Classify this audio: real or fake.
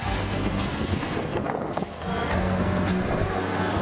fake